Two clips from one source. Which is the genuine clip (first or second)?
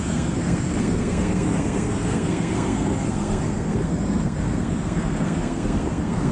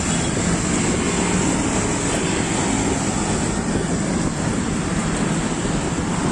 second